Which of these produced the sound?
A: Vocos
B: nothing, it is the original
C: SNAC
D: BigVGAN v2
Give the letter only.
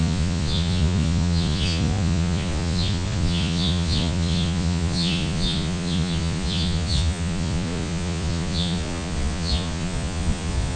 A